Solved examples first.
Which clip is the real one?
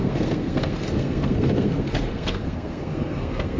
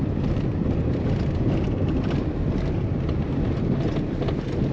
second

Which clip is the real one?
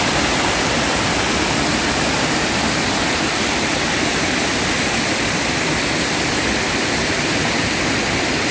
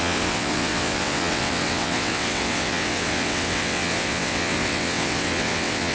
first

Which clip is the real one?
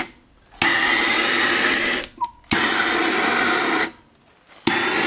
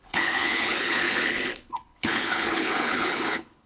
first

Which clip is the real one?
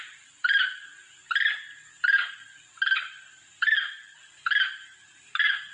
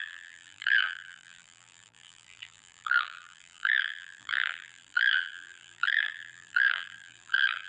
first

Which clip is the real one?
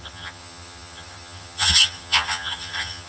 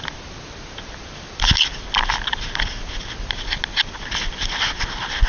second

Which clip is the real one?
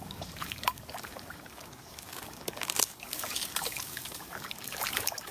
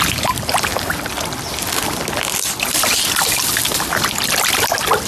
second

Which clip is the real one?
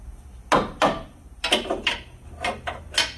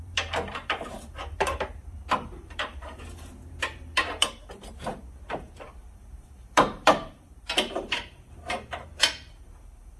first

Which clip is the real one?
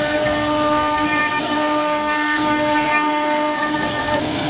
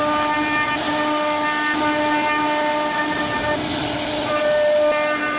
second